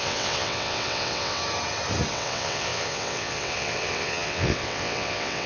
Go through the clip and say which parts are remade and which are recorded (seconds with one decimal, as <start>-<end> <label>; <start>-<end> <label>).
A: 0.0-1.4 remade; 1.4-2.1 recorded; 2.1-5.5 remade